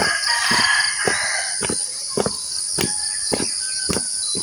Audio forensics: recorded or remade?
recorded